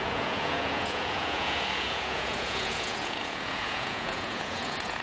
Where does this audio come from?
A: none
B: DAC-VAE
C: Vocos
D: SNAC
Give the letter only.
C